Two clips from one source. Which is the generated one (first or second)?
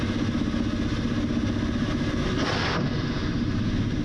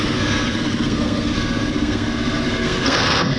second